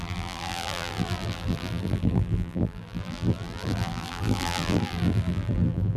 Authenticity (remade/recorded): remade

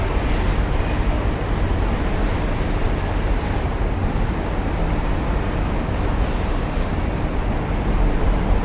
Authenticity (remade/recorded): recorded